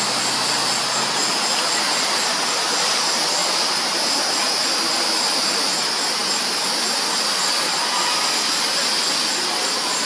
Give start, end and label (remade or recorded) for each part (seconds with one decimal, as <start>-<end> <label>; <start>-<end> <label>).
0.0-10.1 recorded